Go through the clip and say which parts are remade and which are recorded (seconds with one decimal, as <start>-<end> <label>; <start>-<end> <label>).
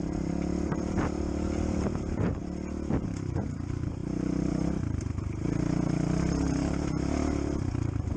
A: 0.0-8.2 recorded